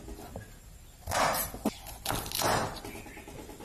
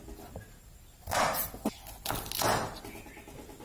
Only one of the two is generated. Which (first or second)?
first